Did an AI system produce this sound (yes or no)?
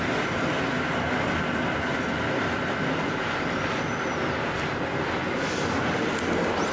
no